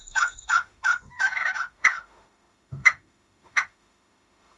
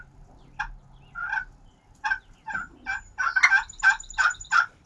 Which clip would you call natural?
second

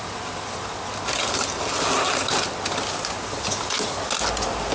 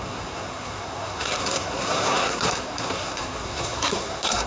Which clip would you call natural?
first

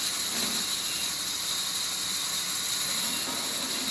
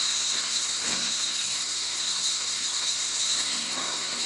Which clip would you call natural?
first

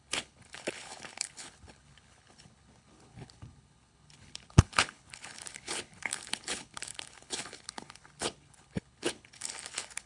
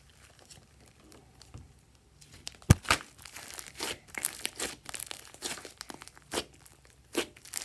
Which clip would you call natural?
second